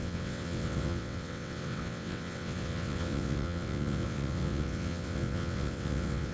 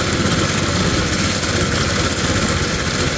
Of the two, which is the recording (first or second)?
second